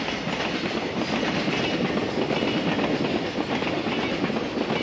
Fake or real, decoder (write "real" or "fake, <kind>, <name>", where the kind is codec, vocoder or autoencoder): real